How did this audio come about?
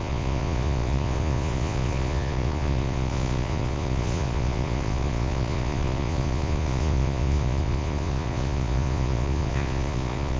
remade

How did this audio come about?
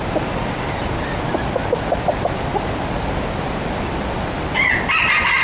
recorded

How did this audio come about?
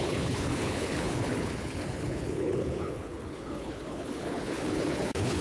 remade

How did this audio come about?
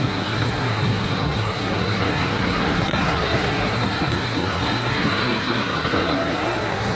remade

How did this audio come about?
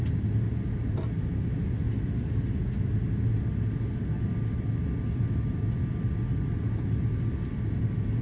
recorded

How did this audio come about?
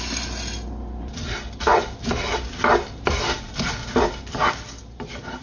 recorded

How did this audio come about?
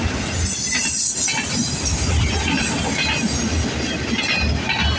recorded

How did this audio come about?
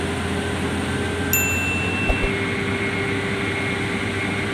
recorded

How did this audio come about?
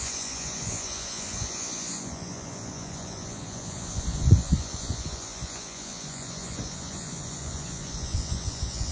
remade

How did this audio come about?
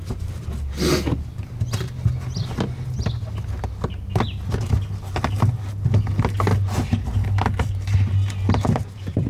recorded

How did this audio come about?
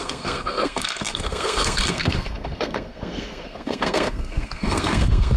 remade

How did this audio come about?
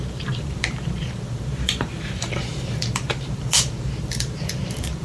remade